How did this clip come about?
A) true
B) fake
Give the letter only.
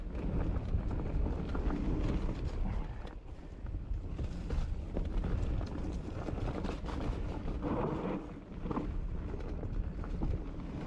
A